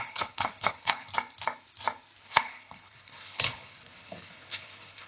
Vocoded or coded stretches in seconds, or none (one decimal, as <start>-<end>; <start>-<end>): 0.0-1.1; 2.2-5.1